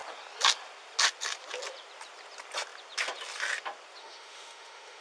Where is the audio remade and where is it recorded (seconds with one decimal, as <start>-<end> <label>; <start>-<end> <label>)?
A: 0.0-4.0 recorded; 4.0-5.0 remade

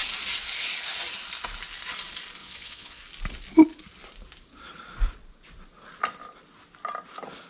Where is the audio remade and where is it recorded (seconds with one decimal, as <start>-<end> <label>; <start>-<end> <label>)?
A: 0.0-2.4 recorded; 2.4-3.0 remade; 3.0-7.5 recorded

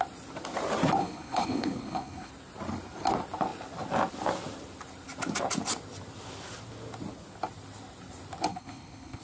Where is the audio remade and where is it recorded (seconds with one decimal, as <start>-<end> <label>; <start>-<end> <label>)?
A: 0.0-1.0 recorded; 1.0-2.3 remade; 2.3-8.5 recorded; 8.5-9.2 remade

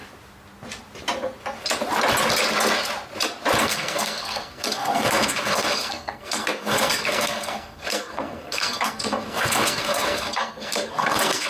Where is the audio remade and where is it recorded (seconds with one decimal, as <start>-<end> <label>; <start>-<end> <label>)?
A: 0.0-3.6 recorded; 3.6-11.5 remade

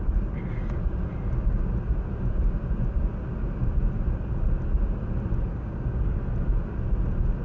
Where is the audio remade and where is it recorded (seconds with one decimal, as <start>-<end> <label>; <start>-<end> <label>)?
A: 0.0-5.5 recorded; 5.5-6.2 remade; 6.2-7.4 recorded

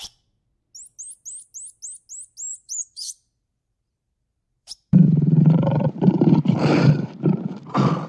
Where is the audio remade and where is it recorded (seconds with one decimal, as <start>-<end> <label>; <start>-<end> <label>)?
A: 0.0-2.5 recorded; 2.5-7.1 remade; 7.1-8.1 recorded

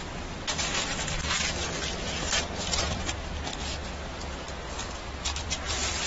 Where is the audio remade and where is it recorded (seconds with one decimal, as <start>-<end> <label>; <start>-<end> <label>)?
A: 0.0-1.8 recorded; 1.8-3.1 remade; 3.1-3.8 recorded; 3.8-6.1 remade